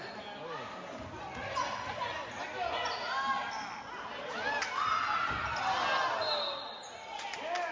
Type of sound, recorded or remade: recorded